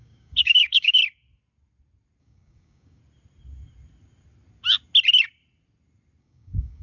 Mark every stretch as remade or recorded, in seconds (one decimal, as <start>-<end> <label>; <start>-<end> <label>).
0.0-1.0 remade; 1.0-2.2 recorded; 2.2-3.0 remade; 3.0-6.2 recorded; 6.2-6.8 remade